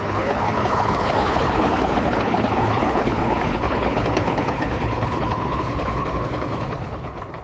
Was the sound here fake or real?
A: fake